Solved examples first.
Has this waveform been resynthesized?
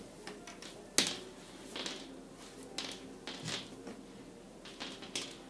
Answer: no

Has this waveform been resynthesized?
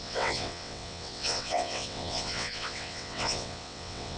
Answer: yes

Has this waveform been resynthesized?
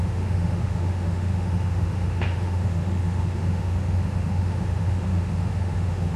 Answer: yes